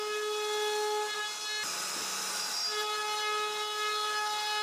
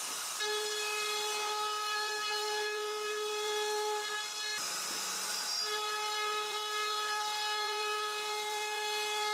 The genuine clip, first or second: first